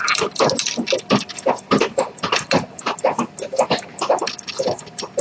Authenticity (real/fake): real